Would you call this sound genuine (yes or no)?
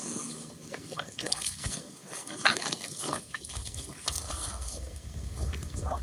no